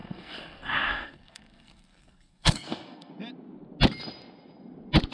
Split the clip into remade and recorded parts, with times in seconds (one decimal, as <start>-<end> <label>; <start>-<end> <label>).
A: 0.0-3.1 remade; 3.1-5.1 recorded